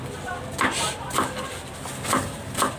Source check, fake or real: real